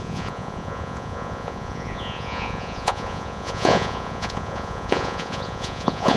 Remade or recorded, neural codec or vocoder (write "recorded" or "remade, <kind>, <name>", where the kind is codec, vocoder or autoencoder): remade, vocoder, Vocos